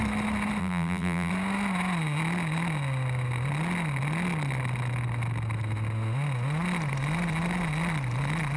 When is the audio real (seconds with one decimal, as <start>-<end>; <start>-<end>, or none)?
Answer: 0.0-0.6; 1.3-8.6